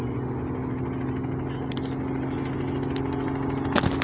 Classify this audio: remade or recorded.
recorded